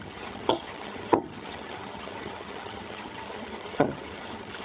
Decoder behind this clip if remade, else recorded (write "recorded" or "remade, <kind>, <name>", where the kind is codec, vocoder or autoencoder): remade, vocoder, HiFi-GAN